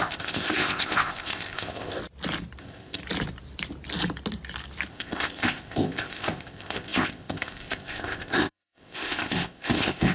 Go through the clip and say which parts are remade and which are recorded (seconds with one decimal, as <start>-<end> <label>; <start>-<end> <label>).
0.0-2.0 remade; 2.0-2.6 recorded; 2.6-3.0 remade; 3.0-4.9 recorded; 4.9-10.1 remade

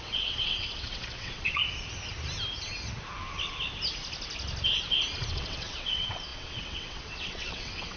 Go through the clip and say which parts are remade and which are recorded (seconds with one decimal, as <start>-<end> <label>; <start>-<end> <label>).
0.0-1.6 remade; 1.6-5.3 recorded; 5.3-8.0 remade

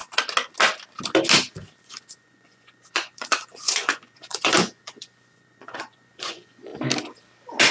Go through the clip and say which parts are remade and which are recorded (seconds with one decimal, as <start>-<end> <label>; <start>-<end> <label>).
0.0-1.8 recorded; 1.8-6.7 remade; 6.7-7.7 recorded

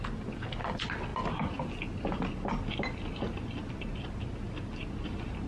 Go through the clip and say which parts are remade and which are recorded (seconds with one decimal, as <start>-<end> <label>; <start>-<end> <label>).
0.0-5.5 recorded

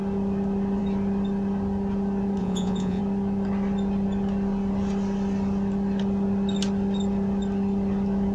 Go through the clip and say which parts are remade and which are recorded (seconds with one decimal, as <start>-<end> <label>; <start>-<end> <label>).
0.0-2.4 recorded; 2.4-3.0 remade; 3.0-8.3 recorded